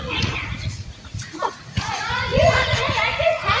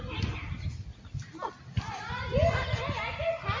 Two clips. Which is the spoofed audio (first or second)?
first